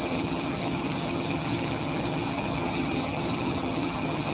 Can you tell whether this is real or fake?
fake